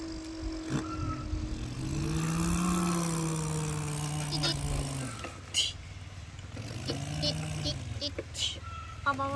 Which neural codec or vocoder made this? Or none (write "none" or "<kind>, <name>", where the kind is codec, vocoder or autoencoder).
none